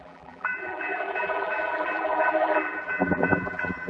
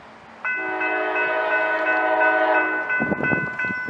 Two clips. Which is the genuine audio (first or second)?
second